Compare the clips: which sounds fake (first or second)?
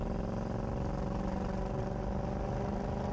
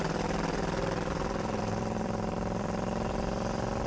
second